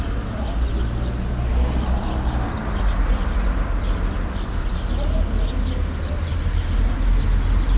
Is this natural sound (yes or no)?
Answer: yes